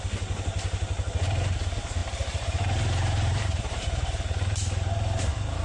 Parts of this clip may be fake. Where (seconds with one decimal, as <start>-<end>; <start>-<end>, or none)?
2.0-5.6